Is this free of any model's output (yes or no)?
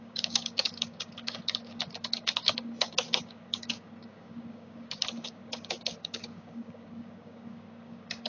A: no